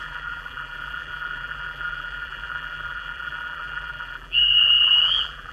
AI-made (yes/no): yes